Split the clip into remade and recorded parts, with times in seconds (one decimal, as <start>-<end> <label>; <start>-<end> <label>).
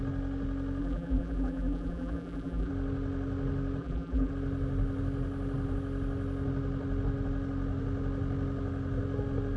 0.0-0.8 recorded; 0.8-2.7 remade; 2.7-3.8 recorded; 3.8-4.3 remade; 4.3-9.6 recorded